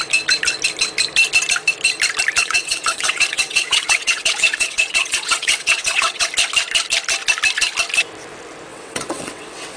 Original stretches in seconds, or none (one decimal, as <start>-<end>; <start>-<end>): 0.0-2.4; 6.3-8.7